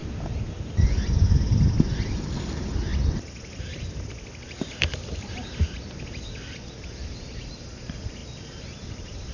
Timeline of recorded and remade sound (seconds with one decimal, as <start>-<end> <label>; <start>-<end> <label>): 0.0-2.9 recorded; 2.9-6.3 remade; 6.3-8.2 recorded; 8.2-9.3 remade